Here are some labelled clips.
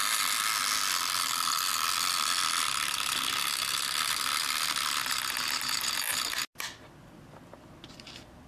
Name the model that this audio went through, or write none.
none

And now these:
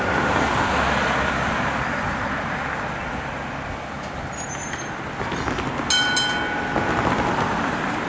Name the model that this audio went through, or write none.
none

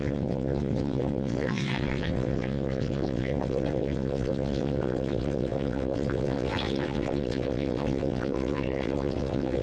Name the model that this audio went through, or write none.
vocoder, WaveNeXt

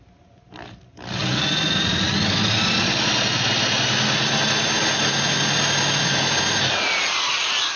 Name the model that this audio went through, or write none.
none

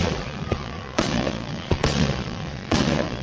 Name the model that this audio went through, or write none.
vocoder, Vocos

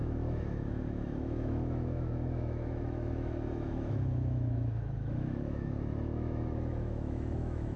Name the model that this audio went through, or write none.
autoencoder, DAC-VAE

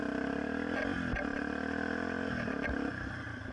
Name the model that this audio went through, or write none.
none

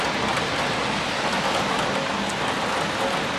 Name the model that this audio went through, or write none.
none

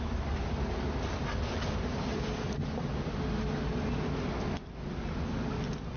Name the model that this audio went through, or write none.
none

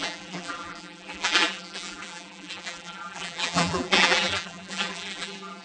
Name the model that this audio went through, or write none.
vocoder, BigVGAN v2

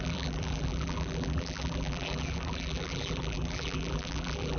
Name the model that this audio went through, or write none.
vocoder, BigVGAN v2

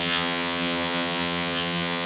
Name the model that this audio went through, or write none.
vocoder, HiFi-GAN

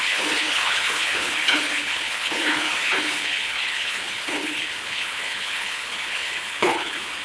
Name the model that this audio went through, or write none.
codec, HILCodec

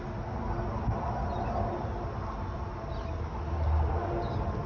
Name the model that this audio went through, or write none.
none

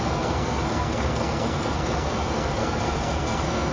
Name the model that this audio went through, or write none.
codec, SNAC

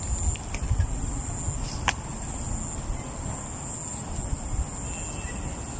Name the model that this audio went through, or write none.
none